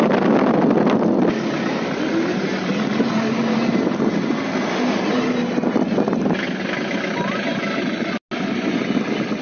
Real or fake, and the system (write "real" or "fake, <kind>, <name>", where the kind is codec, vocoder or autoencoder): real